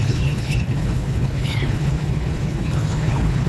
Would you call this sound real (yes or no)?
no